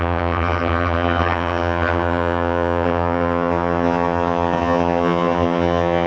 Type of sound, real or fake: fake